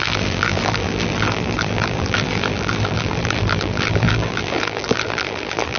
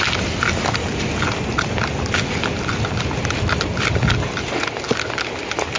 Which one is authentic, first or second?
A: second